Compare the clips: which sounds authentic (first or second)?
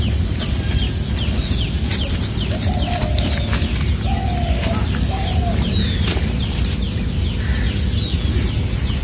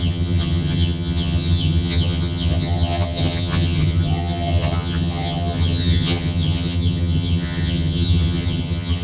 first